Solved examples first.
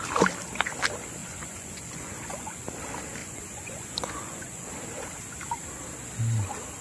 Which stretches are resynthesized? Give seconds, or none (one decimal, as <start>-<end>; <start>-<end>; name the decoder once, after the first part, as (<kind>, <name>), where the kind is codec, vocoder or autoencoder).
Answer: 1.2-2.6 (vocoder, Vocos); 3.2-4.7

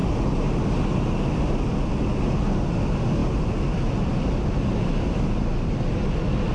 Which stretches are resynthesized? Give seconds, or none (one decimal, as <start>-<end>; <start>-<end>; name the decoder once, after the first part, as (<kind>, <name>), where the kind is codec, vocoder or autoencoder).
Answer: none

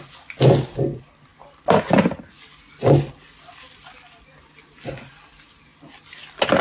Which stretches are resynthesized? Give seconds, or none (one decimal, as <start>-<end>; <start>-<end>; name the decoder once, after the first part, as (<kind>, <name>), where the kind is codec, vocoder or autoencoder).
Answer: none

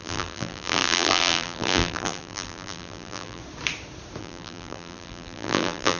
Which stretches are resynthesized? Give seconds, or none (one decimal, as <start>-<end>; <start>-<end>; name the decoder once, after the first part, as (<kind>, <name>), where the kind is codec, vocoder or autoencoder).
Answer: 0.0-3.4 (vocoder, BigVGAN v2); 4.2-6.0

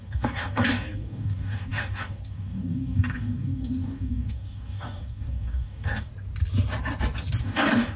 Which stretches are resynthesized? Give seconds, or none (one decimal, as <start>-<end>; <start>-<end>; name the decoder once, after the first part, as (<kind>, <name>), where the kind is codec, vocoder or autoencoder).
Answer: 0.0-6.1 (codec, DAC); 7.4-8.0